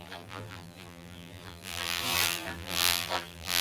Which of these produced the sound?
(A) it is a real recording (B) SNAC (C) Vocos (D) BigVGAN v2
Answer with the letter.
D